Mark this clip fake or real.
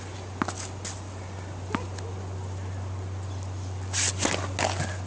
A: real